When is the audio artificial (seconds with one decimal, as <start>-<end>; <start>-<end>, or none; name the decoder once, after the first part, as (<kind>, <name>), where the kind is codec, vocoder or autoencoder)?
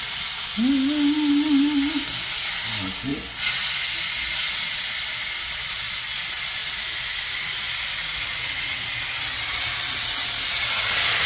8.0-8.9 (vocoder, Vocos)